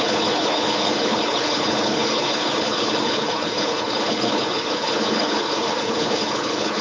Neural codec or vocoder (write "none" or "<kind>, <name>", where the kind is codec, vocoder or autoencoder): codec, HILCodec